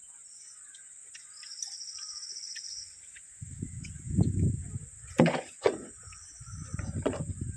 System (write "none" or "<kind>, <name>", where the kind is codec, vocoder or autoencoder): vocoder, Vocos